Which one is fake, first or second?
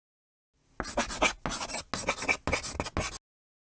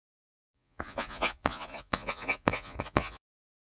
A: second